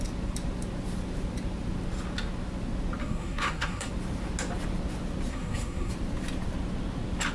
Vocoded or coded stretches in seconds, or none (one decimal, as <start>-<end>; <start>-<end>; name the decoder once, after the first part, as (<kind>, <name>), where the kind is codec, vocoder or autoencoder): 3.0-3.9 (codec, SNAC); 5.3-5.9